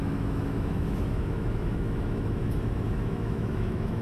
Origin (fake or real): fake